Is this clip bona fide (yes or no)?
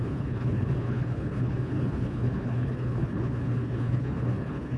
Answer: no